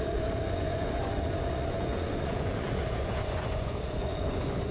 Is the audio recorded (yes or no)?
no